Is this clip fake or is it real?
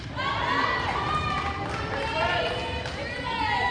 real